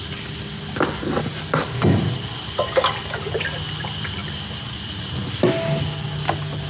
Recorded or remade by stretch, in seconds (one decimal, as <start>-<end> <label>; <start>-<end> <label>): 0.0-4.2 recorded; 4.2-4.9 remade; 4.9-6.7 recorded